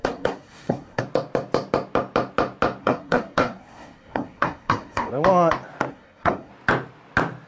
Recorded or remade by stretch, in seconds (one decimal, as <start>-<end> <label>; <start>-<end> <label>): 0.0-1.0 remade; 1.0-2.8 recorded; 2.8-5.1 remade; 5.1-5.9 recorded; 5.9-6.5 remade; 6.5-7.5 recorded

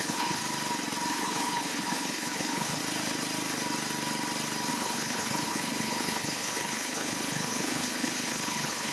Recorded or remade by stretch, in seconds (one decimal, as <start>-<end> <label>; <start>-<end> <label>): 0.0-0.4 remade; 0.4-1.1 recorded; 1.1-2.8 remade; 2.8-4.7 recorded; 4.7-8.9 remade

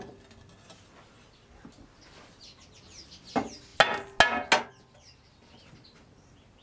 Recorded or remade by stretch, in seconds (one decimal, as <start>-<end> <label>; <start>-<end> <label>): 0.0-6.6 recorded

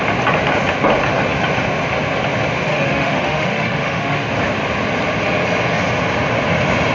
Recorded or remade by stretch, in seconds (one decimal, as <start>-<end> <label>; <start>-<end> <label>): 0.0-2.7 recorded; 2.7-4.3 remade; 4.3-6.9 recorded